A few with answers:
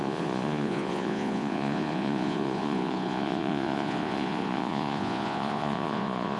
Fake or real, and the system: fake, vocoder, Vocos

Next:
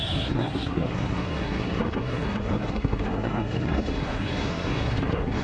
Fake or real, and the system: fake, codec, SNAC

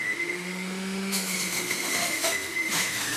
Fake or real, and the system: fake, autoencoder, DAC-VAE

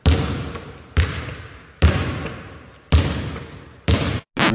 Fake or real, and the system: real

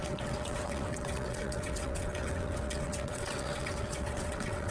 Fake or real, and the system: fake, vocoder, WaveNeXt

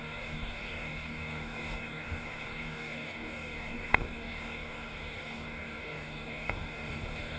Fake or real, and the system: fake, codec, DAC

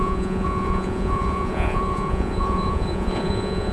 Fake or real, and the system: fake, vocoder, Vocos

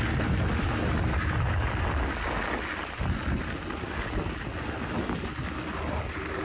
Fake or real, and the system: real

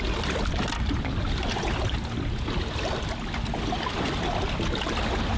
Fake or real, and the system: real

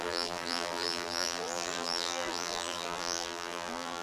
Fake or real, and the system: fake, vocoder, BigVGAN v2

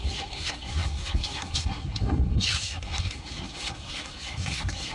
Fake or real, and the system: fake, codec, SNAC